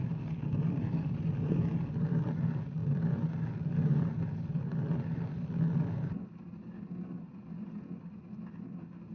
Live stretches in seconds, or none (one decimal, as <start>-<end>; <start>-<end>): 0.0-9.1